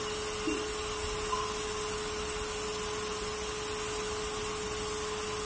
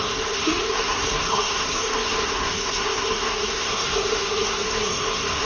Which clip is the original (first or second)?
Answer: first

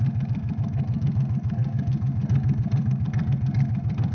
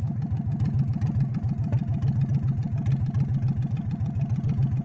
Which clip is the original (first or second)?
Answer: second